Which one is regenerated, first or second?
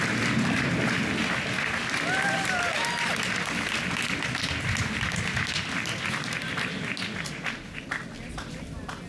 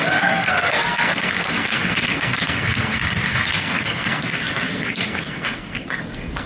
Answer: second